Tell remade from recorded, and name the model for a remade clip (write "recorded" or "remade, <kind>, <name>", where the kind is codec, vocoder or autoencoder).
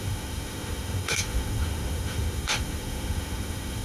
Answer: remade, autoencoder, DAC-VAE